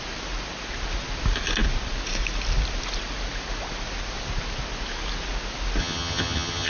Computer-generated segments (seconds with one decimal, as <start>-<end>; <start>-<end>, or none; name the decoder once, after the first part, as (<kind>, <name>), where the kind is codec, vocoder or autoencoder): 5.8-6.7 (vocoder, HiFi-GAN)